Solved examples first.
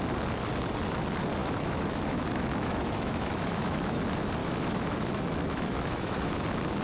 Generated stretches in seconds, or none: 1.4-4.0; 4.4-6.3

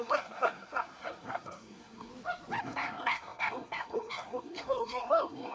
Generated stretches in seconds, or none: 0.0-2.1; 2.6-5.5

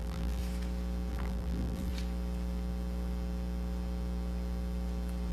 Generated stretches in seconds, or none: 0.0-0.4; 1.1-1.9

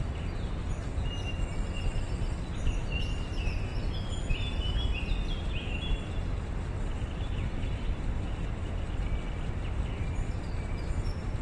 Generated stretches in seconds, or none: none

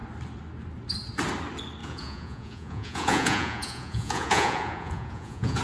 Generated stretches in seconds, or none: 1.8-5.6

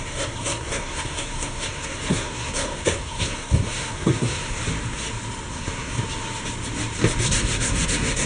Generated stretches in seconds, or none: 0.0-4.6; 5.5-6.0; 7.2-8.3

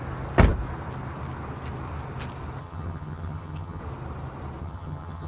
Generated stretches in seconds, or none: 2.6-3.8; 4.6-5.3

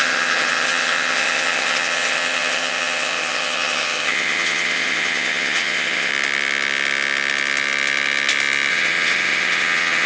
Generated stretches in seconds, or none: 0.0-6.1; 8.7-10.1